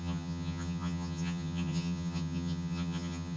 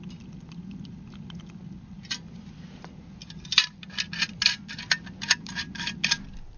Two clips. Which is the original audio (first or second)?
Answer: second